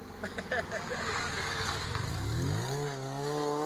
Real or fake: fake